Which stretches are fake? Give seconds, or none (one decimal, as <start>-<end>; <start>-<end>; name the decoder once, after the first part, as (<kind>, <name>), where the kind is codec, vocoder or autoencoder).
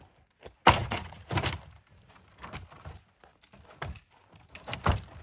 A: 0.8-1.3 (vocoder, Vocos)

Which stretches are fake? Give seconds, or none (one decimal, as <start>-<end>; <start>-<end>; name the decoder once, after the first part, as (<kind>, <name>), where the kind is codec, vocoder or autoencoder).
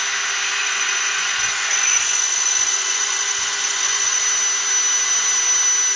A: 0.6-4.2 (vocoder, Vocos)